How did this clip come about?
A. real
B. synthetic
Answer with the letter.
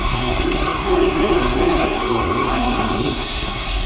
B